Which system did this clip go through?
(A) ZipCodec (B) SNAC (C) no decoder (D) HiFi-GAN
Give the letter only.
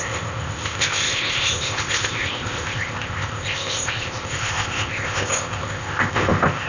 A